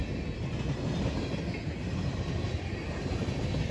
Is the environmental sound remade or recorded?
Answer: recorded